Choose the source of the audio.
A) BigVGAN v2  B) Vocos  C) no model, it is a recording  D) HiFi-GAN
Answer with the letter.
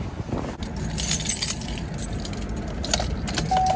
C